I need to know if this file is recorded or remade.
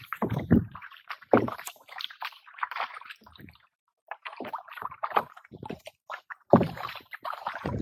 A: remade